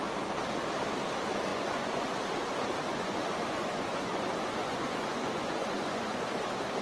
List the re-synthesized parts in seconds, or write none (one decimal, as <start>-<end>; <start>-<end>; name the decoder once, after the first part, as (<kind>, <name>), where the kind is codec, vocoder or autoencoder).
1.5-2.2 (vocoder, Vocos); 2.9-6.2